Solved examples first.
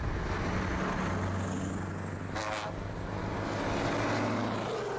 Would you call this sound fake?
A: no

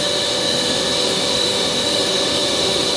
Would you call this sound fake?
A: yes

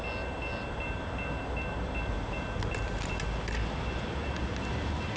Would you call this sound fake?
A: no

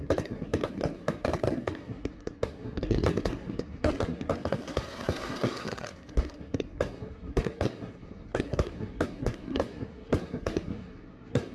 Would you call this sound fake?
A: yes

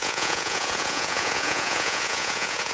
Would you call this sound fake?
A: yes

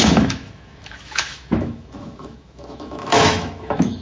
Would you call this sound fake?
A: yes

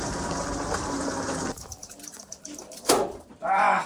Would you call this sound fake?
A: yes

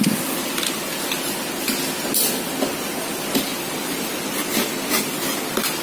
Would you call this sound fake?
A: no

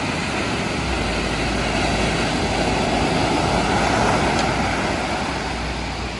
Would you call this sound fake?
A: no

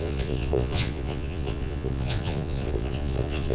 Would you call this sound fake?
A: yes